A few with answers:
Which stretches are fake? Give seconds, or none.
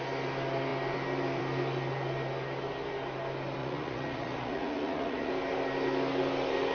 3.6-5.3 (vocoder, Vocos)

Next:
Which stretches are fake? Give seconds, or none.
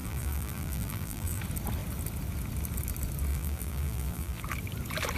0.0-1.4 (vocoder, BigVGAN v2); 3.3-4.4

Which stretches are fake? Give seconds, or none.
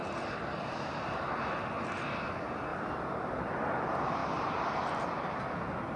2.7-3.5 (vocoder, BigVGAN v2); 4.2-5.4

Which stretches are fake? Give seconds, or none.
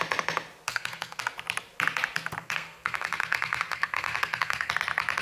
0.7-1.2 (codec, SNAC); 2.4-4.7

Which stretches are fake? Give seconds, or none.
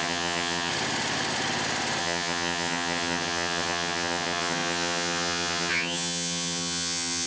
0.0-0.7 (vocoder, HiFi-GAN); 2.0-7.3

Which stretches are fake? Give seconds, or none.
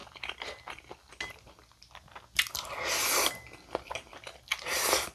none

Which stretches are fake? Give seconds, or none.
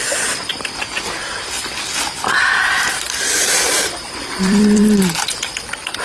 2.6-5.5 (vocoder, BigVGAN v2)